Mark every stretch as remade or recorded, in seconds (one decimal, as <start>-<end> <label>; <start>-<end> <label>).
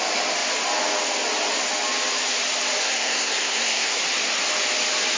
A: 0.0-2.8 recorded; 2.8-4.0 remade; 4.0-5.2 recorded